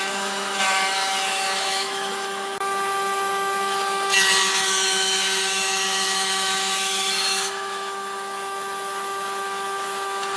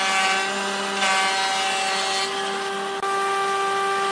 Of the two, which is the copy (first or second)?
first